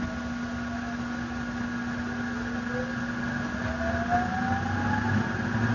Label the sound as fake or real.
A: real